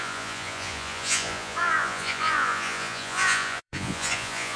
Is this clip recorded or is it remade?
remade